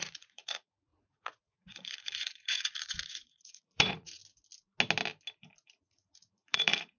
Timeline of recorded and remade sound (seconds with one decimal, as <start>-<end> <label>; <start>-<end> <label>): 0.0-4.2 remade; 4.2-5.8 recorded; 5.8-7.0 remade